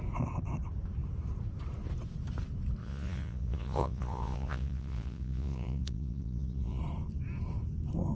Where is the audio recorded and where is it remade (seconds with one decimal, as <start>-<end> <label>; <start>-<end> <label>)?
0.0-2.8 recorded; 2.8-6.8 remade; 6.8-8.1 recorded